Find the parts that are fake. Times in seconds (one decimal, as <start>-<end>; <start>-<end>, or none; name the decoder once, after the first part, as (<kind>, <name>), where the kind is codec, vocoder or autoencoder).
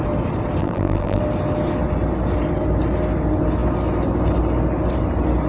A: 0.6-1.2 (vocoder, BigVGAN v2)